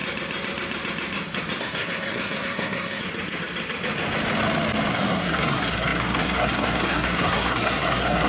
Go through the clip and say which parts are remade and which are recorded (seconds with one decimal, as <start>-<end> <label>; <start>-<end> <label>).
0.0-1.6 recorded; 1.6-3.0 remade; 3.0-4.9 recorded; 4.9-8.3 remade